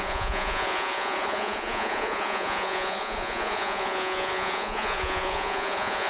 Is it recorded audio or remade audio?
remade